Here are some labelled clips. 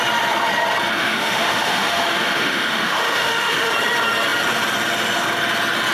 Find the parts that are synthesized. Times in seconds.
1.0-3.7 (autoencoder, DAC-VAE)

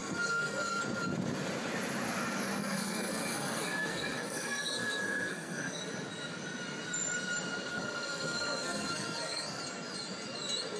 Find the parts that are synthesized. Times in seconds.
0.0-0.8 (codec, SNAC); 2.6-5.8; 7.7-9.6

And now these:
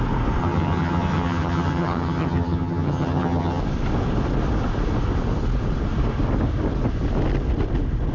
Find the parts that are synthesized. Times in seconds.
0.4-3.6 (vocoder, HiFi-GAN)